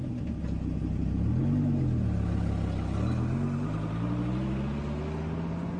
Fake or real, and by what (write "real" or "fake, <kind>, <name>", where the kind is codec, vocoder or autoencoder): real